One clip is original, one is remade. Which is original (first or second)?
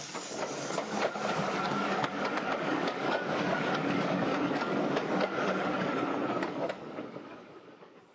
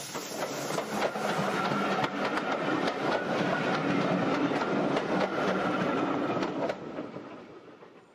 second